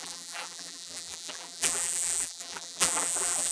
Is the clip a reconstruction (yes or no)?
yes